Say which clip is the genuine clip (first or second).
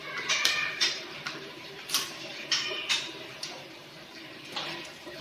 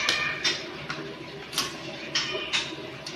second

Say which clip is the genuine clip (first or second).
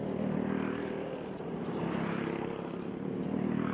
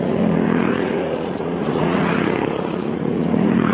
first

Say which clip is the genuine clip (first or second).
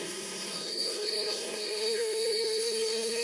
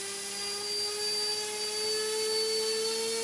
second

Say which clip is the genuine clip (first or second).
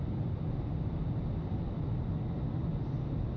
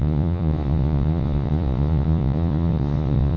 first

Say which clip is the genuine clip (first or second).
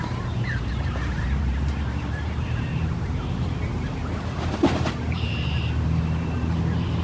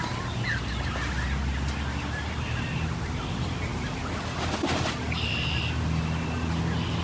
second